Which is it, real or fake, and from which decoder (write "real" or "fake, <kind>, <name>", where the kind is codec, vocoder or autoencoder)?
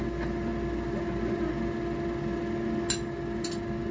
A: real